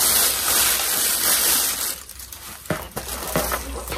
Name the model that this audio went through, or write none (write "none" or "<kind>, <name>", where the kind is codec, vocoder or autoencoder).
none